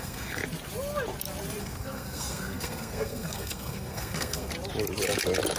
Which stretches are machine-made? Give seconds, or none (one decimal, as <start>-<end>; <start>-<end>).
0.0-0.4; 1.6-4.5